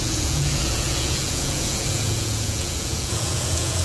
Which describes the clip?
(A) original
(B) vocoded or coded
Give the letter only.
B